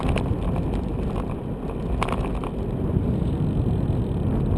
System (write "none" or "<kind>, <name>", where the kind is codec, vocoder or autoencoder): none